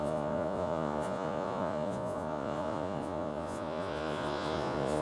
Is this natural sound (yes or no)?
no